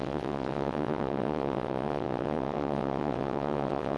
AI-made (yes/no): yes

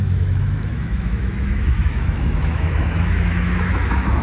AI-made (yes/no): yes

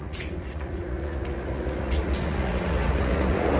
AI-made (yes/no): yes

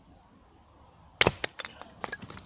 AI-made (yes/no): no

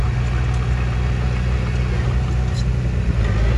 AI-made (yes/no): no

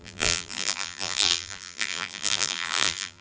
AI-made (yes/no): yes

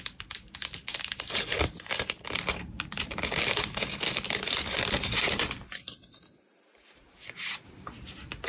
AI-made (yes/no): no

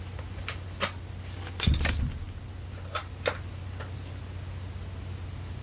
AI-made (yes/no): no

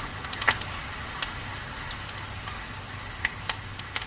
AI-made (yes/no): no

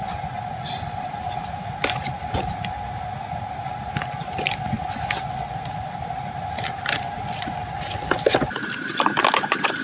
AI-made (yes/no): no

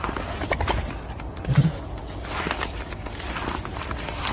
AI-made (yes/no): no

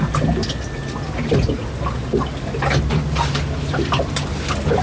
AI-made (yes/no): no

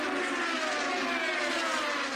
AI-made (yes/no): no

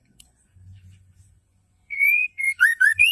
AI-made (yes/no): yes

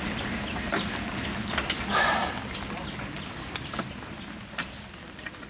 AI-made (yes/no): no